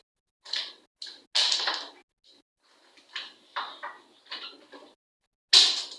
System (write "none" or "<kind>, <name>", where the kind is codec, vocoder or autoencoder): none